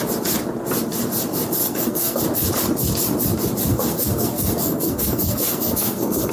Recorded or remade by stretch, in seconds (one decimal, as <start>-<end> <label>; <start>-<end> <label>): 0.0-1.6 recorded; 1.6-2.2 remade; 2.2-3.7 recorded; 3.7-6.3 remade